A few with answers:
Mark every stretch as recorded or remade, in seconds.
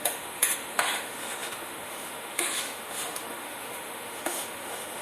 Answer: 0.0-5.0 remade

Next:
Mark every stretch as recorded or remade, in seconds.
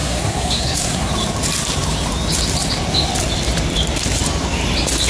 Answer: 0.0-1.1 remade; 1.1-5.1 recorded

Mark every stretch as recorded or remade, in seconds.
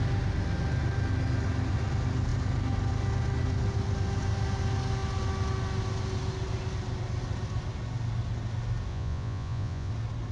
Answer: 0.0-8.9 recorded; 8.9-9.9 remade; 9.9-10.3 recorded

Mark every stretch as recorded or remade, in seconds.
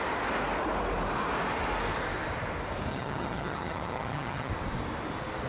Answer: 0.0-2.9 recorded; 2.9-4.5 remade; 4.5-5.5 recorded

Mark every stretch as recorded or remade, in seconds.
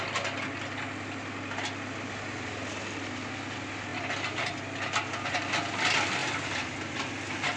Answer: 0.0-6.2 recorded; 6.2-6.9 remade; 6.9-7.6 recorded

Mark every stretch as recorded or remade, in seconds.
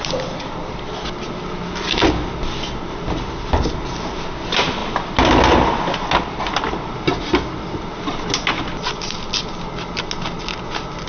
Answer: 0.0-11.1 recorded